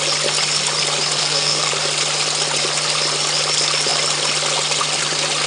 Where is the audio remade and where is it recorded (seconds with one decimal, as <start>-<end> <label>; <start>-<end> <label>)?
0.0-1.2 recorded; 1.2-1.7 remade; 1.7-5.5 recorded